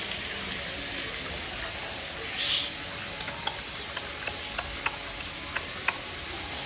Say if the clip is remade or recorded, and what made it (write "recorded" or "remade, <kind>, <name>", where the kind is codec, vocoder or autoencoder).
recorded